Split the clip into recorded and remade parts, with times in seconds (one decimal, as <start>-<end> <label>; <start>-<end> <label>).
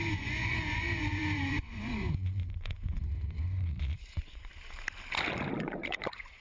0.0-4.5 remade; 4.5-5.6 recorded; 5.6-6.4 remade